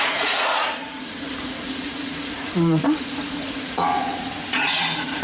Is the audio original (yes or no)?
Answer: no